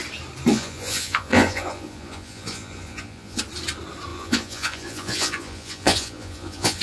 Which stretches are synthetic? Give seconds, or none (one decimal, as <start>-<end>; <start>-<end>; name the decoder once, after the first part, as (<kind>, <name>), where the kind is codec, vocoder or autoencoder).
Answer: 0.5-3.4 (vocoder, Vocos); 4.1-6.8

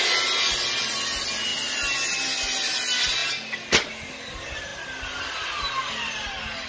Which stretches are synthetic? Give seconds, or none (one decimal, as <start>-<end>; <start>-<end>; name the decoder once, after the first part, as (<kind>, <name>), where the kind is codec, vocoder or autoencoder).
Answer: none

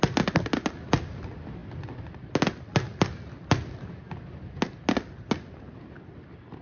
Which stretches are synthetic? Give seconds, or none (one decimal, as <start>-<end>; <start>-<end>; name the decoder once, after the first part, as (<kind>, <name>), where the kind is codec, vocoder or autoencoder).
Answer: none

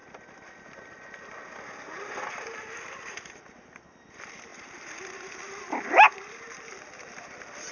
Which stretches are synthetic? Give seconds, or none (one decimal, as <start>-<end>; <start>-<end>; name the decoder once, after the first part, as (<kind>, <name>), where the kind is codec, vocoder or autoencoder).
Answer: none

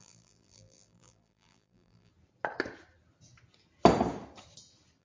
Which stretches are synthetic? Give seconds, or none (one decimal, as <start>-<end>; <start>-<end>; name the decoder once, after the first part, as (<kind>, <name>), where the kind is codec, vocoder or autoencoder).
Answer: 0.0-2.1 (vocoder, BigVGAN v2)

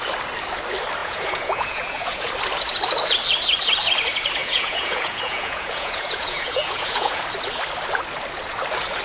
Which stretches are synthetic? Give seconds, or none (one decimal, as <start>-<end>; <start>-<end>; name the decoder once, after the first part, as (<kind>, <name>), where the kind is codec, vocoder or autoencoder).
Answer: 1.0-2.3 (vocoder, Vocos); 4.4-7.2

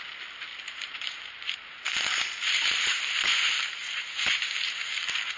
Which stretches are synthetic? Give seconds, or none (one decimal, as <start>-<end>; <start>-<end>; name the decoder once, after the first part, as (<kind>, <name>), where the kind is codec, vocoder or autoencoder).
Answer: 0.5-1.8 (vocoder, BigVGAN v2); 2.9-3.4; 3.8-5.0